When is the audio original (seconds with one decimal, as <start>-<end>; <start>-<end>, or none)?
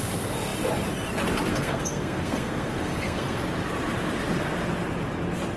0.0-1.5; 3.4-5.6